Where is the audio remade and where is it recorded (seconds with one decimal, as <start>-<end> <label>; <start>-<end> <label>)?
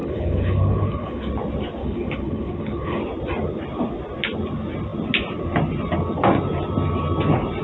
0.0-1.3 remade; 1.3-1.8 recorded; 1.8-3.0 remade; 3.0-7.6 recorded